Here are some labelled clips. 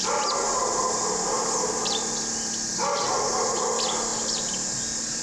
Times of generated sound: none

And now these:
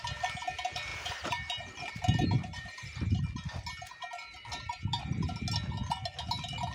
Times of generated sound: 0.9-3.2 (vocoder, BigVGAN v2); 4.4-5.1

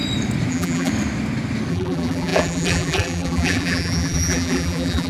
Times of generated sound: 0.5-0.9 (vocoder, BigVGAN v2); 1.7-5.1

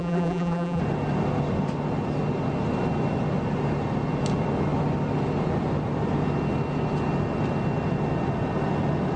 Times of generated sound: 0.0-0.8 (vocoder, BigVGAN v2)

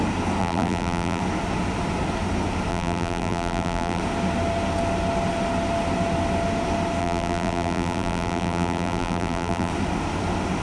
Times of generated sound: 0.4-1.2 (vocoder, BigVGAN v2); 2.7-4.0; 7.0-9.7

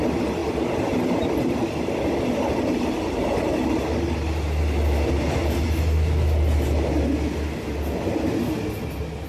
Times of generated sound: none

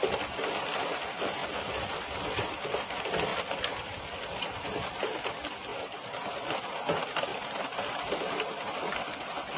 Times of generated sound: 5.7-6.6 (vocoder, BigVGAN v2); 7.3-9.6